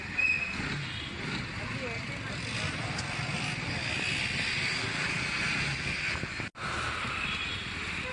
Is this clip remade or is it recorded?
recorded